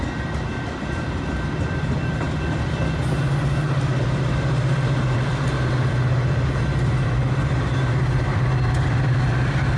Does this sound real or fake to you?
fake